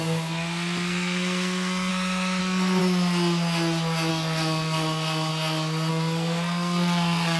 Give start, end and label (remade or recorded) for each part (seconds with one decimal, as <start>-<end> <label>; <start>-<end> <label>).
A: 0.0-1.9 remade; 1.9-2.4 recorded; 2.4-2.8 remade; 2.8-4.1 recorded; 4.1-5.3 remade; 5.3-5.9 recorded; 5.9-7.4 remade